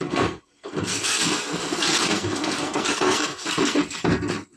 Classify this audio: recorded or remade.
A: remade